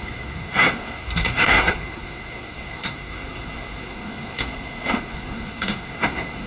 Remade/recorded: remade